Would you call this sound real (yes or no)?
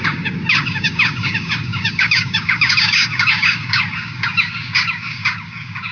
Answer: no